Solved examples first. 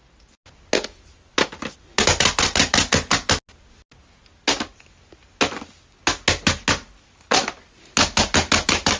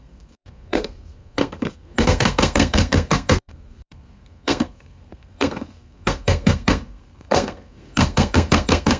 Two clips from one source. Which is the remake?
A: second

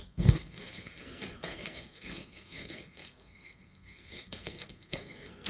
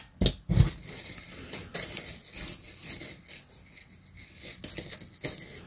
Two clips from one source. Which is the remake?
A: first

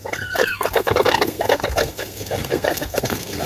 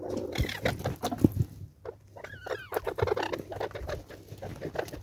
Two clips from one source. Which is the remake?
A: first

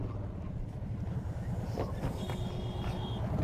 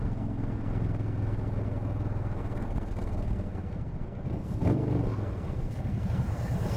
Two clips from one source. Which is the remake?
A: second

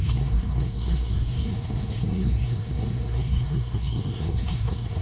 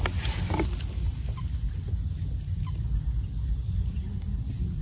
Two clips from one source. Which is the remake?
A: first